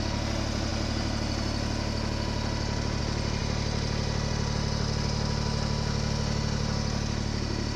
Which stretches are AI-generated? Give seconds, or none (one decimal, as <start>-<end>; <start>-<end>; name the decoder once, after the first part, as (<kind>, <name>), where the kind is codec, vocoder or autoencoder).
none